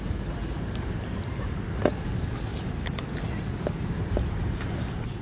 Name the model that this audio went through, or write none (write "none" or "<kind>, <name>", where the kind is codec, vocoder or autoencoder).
vocoder, BigVGAN v2